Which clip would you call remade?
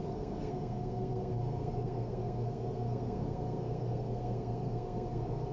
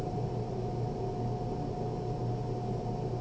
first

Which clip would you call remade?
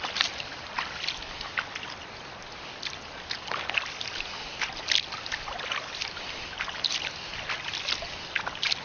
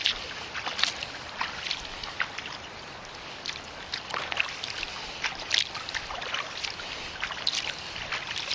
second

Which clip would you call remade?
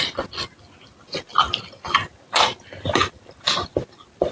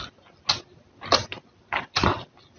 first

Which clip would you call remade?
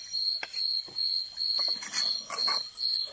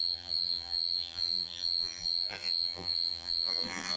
second